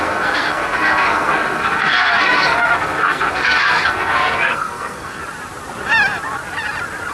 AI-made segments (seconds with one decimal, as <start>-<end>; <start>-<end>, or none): 0.0-5.2